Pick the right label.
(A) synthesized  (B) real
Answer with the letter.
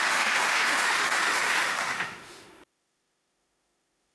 A